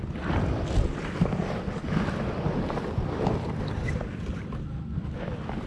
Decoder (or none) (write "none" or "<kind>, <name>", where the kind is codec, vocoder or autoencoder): none